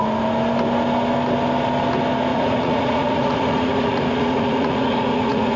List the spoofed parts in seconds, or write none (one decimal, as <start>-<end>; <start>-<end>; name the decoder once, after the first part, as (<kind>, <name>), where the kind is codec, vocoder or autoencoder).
2.3-5.6 (vocoder, Vocos)